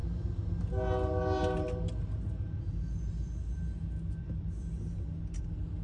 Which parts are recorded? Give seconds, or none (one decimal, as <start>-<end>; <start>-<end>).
0.0-5.8